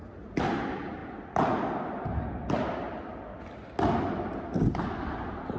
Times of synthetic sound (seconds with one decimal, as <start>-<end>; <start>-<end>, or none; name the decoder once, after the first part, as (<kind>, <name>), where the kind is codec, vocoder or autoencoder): none